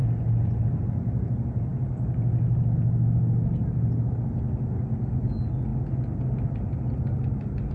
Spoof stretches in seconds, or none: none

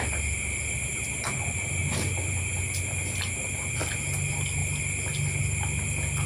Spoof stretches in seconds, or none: none